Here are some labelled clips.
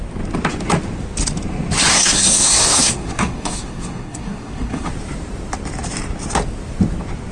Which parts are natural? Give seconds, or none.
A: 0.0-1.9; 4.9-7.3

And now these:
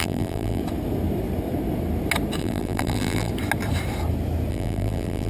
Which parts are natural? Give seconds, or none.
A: 0.6-2.4; 3.3-4.5

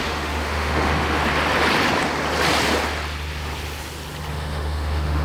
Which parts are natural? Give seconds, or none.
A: 1.2-4.3